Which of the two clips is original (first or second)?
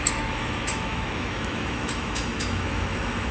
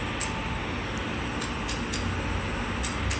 second